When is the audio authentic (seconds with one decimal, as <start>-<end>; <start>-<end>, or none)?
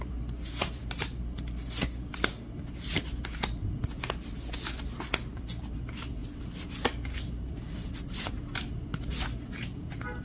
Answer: 0.0-10.2